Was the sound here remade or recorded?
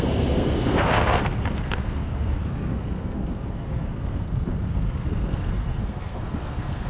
remade